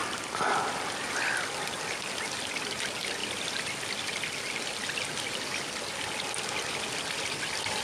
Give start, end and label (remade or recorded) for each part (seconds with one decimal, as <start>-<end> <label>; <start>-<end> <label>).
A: 0.0-1.8 remade; 1.8-3.2 recorded; 3.2-4.4 remade; 4.4-7.8 recorded